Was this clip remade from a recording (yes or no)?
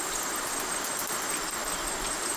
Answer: no